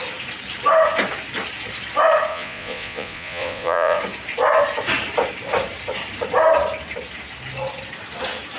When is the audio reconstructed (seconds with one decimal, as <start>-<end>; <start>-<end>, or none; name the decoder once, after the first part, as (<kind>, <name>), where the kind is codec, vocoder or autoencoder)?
2.3-4.0 (vocoder, Vocos)